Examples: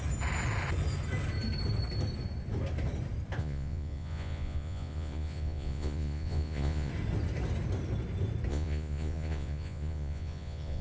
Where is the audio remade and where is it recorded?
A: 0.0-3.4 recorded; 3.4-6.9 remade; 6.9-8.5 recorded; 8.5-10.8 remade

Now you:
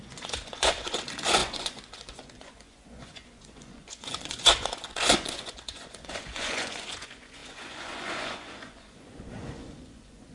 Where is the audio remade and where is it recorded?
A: 0.0-10.3 remade

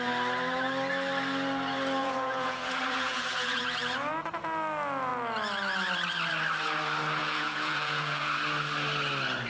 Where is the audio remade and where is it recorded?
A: 0.0-2.0 recorded; 2.0-3.8 remade; 3.8-7.2 recorded; 7.2-8.3 remade; 8.3-9.5 recorded